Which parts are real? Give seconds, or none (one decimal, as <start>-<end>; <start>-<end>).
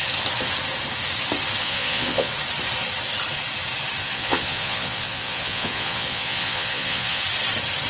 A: 0.0-1.6; 2.3-4.0; 7.2-7.9